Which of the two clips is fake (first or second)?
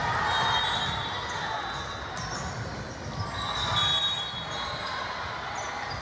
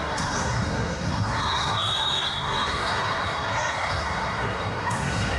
second